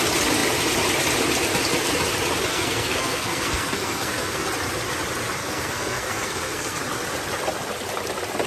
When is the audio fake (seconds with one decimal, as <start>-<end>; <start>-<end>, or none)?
2.5-4.5; 5.4-6.8